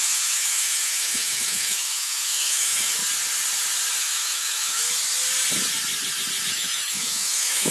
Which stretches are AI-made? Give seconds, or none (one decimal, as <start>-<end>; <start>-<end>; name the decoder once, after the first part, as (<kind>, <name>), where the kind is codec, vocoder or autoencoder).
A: 0.0-3.0 (autoencoder, DAC-VAE); 4.0-4.8; 6.5-7.7